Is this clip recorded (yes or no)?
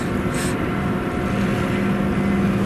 yes